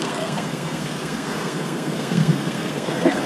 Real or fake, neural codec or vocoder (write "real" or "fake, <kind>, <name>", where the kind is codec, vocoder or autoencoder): fake, codec, SNAC